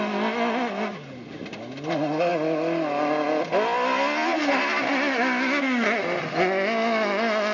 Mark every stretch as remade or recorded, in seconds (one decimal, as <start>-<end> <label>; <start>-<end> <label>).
0.0-7.5 recorded

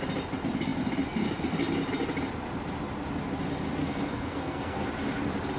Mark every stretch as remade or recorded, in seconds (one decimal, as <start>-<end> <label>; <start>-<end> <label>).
0.0-3.8 recorded; 3.8-4.9 remade; 4.9-5.6 recorded

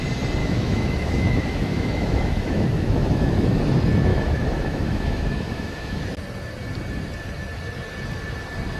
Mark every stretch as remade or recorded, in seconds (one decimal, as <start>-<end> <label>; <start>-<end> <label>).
0.0-0.4 recorded; 0.4-3.6 remade; 3.6-4.1 recorded; 4.1-6.0 remade; 6.0-8.8 recorded

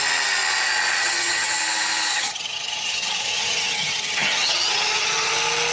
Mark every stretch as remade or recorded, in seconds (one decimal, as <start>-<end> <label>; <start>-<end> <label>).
0.0-1.0 recorded; 1.0-1.6 remade; 1.6-2.1 recorded; 2.1-5.3 remade; 5.3-5.7 recorded

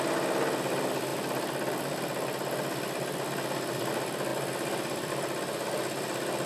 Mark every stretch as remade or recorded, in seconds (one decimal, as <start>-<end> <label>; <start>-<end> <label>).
0.0-6.5 recorded

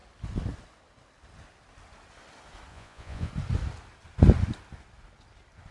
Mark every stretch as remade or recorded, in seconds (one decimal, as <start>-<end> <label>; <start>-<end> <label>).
0.0-2.7 recorded; 2.7-3.3 remade; 3.3-5.7 recorded

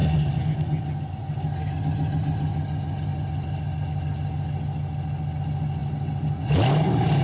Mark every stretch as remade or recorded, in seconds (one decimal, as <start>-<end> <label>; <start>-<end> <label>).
0.0-7.2 recorded

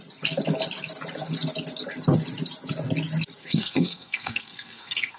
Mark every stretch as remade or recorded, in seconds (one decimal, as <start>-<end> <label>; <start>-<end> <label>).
0.0-3.4 recorded; 3.4-5.2 remade